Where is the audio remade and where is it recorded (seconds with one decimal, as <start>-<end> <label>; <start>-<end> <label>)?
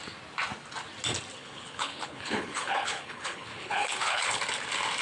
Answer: 0.0-1.4 recorded; 1.4-4.4 remade; 4.4-5.0 recorded